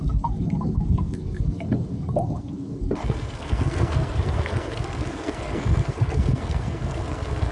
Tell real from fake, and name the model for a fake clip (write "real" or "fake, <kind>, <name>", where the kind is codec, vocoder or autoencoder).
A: fake, codec, SNAC